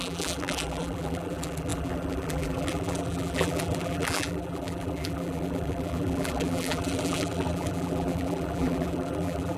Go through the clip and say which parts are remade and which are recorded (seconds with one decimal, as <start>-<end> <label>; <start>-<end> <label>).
0.0-9.6 remade